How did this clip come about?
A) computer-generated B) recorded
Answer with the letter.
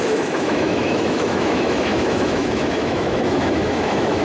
A